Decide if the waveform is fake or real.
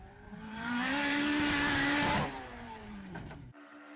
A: fake